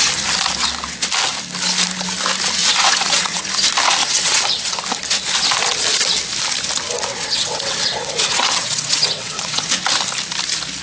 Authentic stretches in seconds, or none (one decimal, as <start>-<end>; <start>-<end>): 0.0-2.6; 3.4-4.0; 4.8-7.1; 9.7-10.8